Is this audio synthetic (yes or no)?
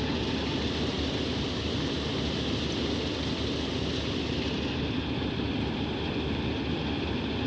no